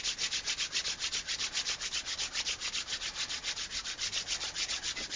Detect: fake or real real